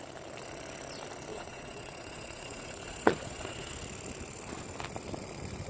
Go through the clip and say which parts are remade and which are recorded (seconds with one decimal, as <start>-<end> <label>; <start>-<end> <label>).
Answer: 0.0-1.3 recorded; 1.3-3.7 remade; 3.7-5.7 recorded